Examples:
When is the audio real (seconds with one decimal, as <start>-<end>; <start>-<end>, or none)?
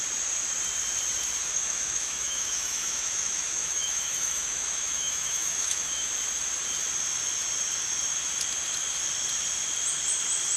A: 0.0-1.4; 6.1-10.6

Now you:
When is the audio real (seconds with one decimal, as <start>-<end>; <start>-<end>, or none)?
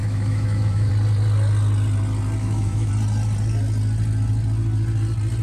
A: 0.9-2.4; 2.9-5.4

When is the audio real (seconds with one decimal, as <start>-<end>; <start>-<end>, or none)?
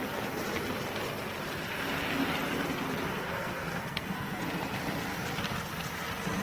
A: 0.0-3.1; 4.4-6.4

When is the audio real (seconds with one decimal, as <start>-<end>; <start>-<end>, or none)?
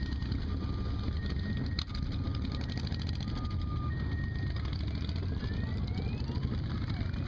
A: 0.0-7.3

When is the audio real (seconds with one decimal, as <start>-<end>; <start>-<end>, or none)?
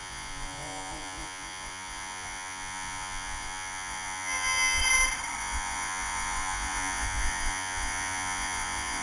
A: 4.8-5.4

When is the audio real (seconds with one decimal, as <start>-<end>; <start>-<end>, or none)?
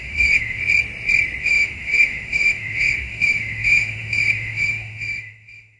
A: 0.6-1.4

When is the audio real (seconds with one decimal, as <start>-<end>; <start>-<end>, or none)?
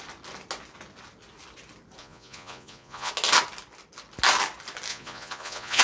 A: 0.0-2.0; 3.1-4.9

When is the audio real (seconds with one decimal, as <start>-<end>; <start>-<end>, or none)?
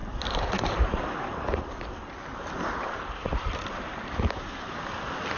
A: 1.0-2.3; 4.9-5.4